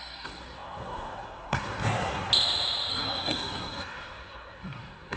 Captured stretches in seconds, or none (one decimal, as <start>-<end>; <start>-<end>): 2.3-2.9